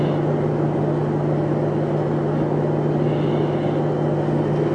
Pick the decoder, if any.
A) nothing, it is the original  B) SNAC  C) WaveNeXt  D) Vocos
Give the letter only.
A